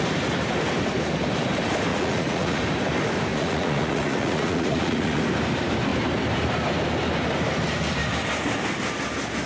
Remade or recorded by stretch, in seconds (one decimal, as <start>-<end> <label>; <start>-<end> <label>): 0.0-1.9 recorded; 1.9-2.6 remade; 2.6-3.3 recorded; 3.3-5.2 remade; 5.2-9.5 recorded

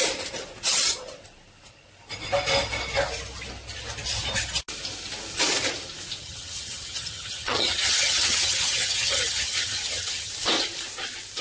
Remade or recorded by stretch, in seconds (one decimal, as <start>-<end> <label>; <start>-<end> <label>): 0.0-6.2 recorded; 6.2-10.3 remade; 10.3-11.4 recorded

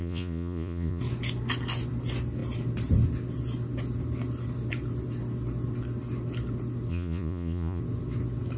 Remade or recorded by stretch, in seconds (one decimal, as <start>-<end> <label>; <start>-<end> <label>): 0.0-1.0 remade; 1.0-6.9 recorded; 6.9-7.8 remade; 7.8-8.6 recorded

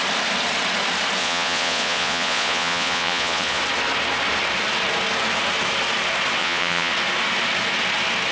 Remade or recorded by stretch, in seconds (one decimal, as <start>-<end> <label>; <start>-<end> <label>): 0.0-1.2 recorded; 1.2-3.6 remade; 3.6-6.4 recorded; 6.4-6.9 remade; 6.9-8.3 recorded